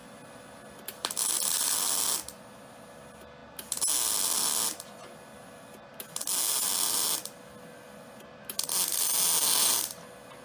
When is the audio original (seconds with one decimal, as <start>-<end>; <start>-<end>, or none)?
0.0-10.4